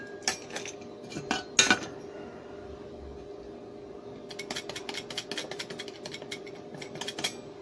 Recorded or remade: recorded